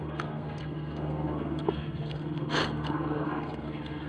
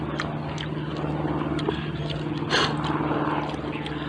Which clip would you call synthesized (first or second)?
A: first